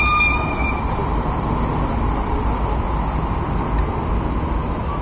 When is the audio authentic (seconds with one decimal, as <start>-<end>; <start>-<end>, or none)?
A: 0.0-5.0